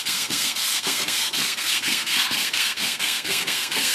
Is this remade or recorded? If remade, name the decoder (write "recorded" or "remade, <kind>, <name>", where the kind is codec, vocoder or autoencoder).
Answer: remade, codec, SNAC